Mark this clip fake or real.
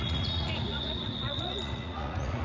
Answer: fake